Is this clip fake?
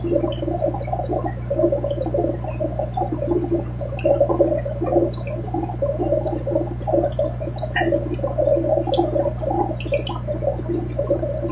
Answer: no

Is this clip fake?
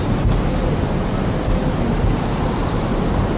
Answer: no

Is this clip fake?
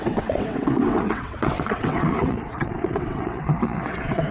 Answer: yes